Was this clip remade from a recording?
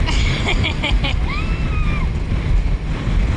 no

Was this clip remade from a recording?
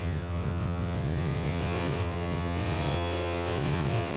yes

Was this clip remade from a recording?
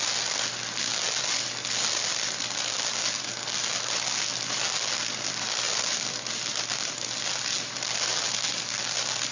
no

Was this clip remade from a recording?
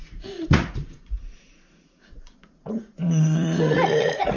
yes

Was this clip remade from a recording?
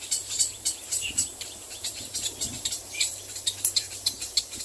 yes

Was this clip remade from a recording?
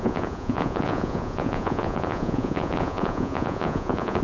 yes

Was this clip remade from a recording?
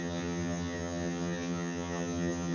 yes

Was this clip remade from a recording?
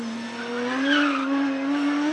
no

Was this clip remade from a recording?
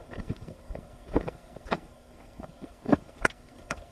yes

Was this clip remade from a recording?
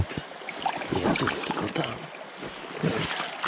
no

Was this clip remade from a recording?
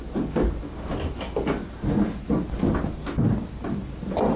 no